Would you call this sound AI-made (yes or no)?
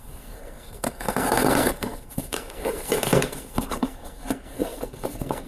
yes